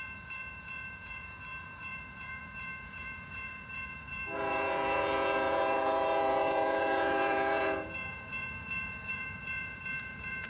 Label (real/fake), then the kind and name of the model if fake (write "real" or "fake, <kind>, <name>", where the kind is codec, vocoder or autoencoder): fake, vocoder, Vocos